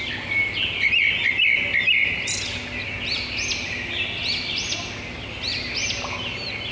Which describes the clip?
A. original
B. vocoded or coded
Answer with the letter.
A